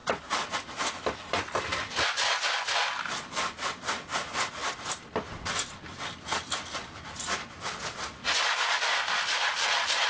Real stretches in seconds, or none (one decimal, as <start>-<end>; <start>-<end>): 0.0-10.1